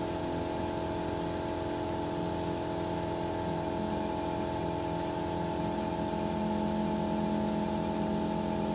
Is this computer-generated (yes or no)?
no